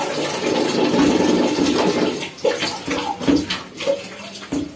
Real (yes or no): yes